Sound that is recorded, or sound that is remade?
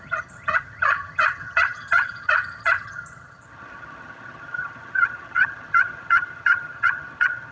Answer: remade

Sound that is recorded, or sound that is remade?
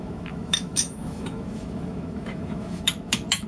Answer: remade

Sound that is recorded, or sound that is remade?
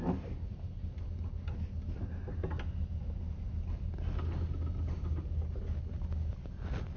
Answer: recorded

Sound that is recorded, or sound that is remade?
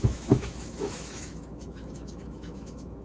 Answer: remade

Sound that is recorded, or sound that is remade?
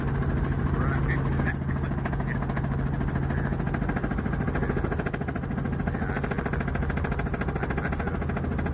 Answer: recorded